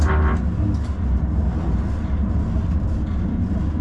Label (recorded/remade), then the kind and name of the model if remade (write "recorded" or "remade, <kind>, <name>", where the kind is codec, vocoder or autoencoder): recorded